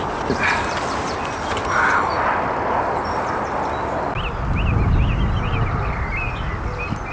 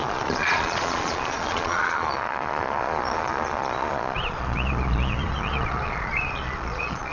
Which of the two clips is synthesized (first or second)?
second